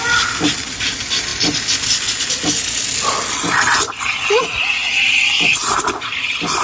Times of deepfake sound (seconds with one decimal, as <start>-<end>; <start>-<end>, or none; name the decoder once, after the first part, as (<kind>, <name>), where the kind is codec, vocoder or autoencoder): none